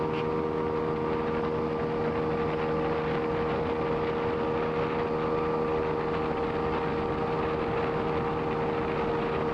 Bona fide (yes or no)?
yes